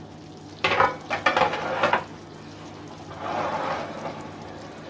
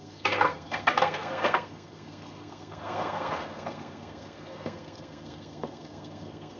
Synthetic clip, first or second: second